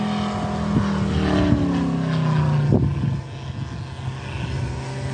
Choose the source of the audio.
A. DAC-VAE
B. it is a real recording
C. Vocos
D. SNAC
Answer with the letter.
B